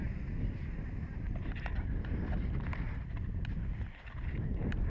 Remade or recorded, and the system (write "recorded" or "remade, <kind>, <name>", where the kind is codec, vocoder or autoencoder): recorded